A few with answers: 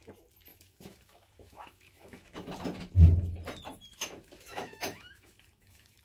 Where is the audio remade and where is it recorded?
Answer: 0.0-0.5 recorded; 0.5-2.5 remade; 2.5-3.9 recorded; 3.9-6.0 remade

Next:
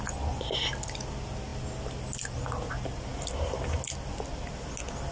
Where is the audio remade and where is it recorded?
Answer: 0.0-5.1 recorded

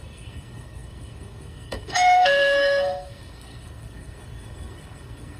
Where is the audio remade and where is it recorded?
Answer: 0.0-5.4 remade

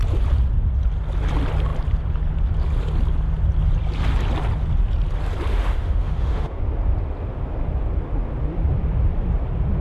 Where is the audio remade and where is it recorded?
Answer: 0.0-5.5 recorded; 5.5-6.6 remade; 6.6-9.8 recorded

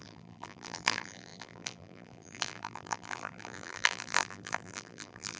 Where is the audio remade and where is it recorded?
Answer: 0.0-5.4 remade

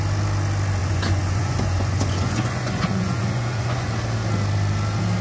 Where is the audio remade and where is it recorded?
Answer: 0.0-0.8 recorded; 0.8-3.9 remade; 3.9-5.2 recorded